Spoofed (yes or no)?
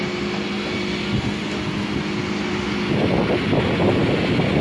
no